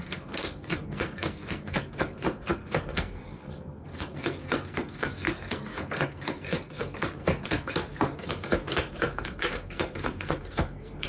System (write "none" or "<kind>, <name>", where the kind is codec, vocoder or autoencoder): codec, SNAC